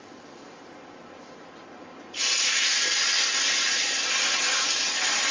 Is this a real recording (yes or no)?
yes